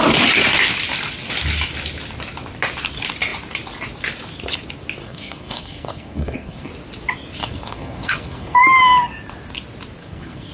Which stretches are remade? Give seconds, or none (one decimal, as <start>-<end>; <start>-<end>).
5.0-6.7; 7.4-8.6; 10.0-10.5